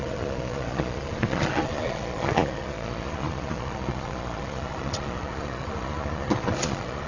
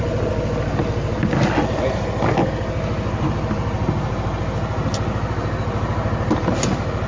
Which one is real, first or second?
second